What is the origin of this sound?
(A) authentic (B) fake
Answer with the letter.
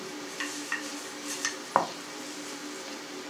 B